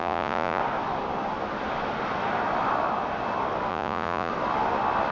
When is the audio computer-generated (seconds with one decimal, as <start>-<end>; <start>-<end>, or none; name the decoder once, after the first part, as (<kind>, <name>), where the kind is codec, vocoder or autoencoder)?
0.0-0.6 (vocoder, Vocos); 3.7-4.3